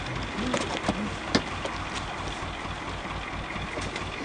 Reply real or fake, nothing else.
real